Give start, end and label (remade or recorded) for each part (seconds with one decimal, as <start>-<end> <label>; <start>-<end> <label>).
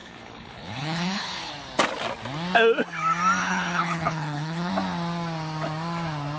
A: 0.0-1.5 remade; 1.5-3.4 recorded; 3.4-4.7 remade; 4.7-6.4 recorded